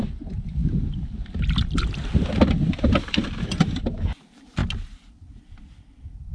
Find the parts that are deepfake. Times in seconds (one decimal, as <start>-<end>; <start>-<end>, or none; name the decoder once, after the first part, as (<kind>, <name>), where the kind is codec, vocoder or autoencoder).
none

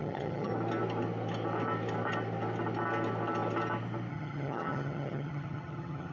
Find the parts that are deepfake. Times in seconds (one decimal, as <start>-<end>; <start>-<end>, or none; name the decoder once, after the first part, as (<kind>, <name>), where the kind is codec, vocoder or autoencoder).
0.0-0.5 (vocoder, HiFi-GAN); 4.1-6.1